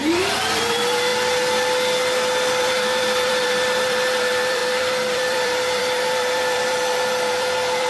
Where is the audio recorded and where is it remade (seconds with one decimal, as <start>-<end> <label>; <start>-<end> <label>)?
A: 0.0-1.1 remade; 1.1-2.6 recorded; 2.6-7.9 remade